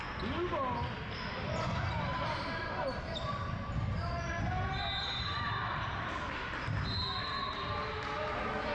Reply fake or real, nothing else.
real